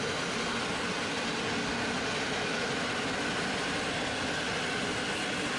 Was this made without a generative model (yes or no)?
yes